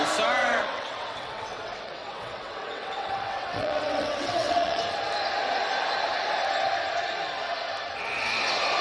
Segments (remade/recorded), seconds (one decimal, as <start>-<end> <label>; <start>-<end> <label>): 0.0-0.4 recorded; 0.4-4.8 remade; 4.8-8.8 recorded